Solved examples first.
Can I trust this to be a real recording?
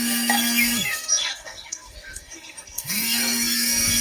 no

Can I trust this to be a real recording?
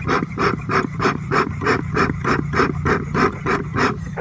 no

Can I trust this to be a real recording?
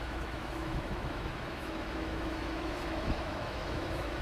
no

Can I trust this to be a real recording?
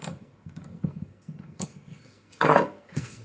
no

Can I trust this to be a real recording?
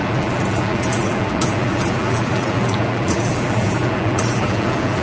no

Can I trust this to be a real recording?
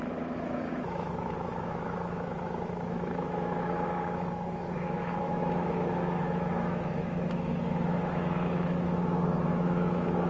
no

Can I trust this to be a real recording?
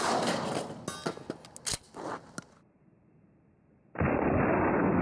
yes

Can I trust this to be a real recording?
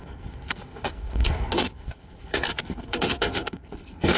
no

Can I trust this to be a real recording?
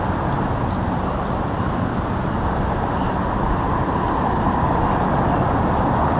yes